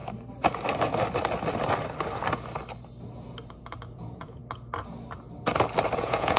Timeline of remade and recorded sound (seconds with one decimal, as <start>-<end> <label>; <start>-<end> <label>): 0.0-3.8 recorded; 3.8-4.4 remade; 4.4-6.0 recorded; 6.0-6.4 remade